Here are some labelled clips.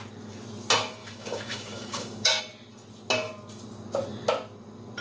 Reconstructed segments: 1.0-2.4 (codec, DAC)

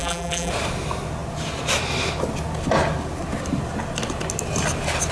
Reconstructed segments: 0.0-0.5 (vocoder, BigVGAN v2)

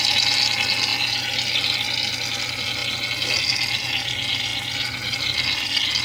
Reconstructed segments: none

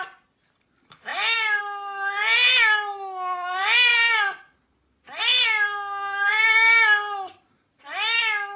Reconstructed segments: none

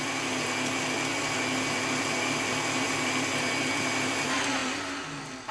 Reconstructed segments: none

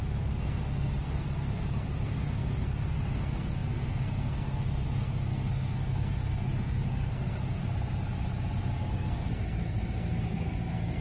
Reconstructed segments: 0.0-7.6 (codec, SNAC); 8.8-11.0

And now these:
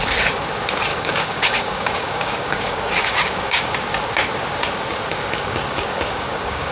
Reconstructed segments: 0.9-3.7 (codec, DAC); 5.1-6.7

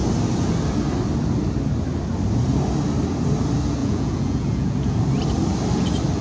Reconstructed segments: 3.8-5.0 (vocoder, Vocos)